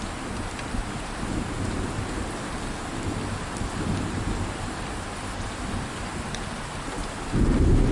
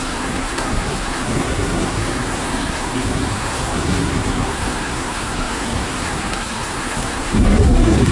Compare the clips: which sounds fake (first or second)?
second